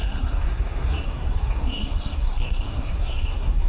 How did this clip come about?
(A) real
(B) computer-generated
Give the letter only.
B